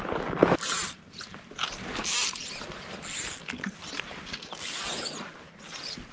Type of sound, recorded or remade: recorded